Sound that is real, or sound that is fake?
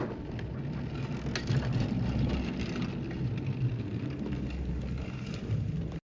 real